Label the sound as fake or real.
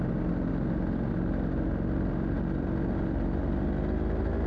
real